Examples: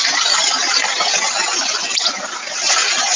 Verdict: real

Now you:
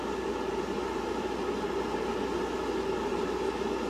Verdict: real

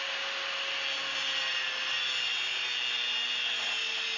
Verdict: real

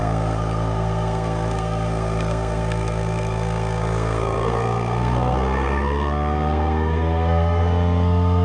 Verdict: fake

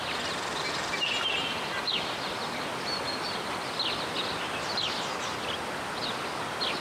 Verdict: real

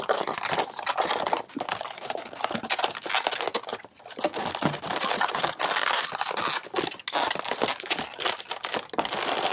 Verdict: real